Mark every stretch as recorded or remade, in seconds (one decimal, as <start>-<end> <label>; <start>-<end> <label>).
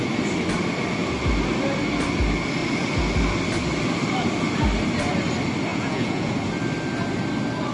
0.0-5.7 recorded; 5.7-6.3 remade; 6.3-7.7 recorded